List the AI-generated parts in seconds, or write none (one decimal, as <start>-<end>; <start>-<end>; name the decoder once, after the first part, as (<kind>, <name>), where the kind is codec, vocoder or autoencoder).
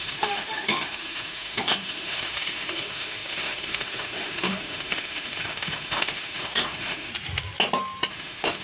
0.0-7.1 (autoencoder, DAC-VAE); 8.1-8.6